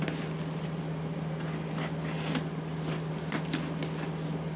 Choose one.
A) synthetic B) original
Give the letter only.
B